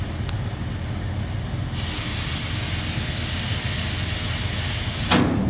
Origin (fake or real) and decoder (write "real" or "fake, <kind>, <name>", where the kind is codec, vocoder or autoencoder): real